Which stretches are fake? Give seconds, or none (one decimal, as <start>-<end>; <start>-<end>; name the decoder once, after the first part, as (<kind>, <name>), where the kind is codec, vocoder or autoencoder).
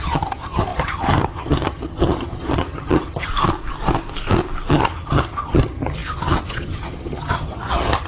0.0-3.3 (vocoder, HiFi-GAN); 4.7-8.1